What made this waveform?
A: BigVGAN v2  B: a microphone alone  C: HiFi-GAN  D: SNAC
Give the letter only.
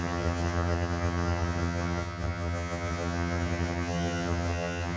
C